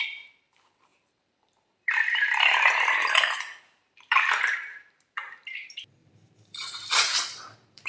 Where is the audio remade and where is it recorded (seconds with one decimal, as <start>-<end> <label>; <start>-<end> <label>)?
0.0-7.9 remade